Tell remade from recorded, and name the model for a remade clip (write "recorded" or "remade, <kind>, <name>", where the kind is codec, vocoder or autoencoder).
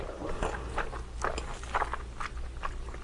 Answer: recorded